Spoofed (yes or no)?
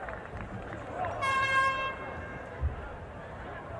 yes